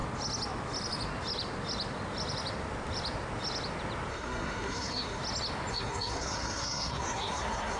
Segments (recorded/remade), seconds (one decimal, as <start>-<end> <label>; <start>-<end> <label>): 0.0-4.1 recorded; 4.1-5.2 remade; 5.2-5.7 recorded; 5.7-7.8 remade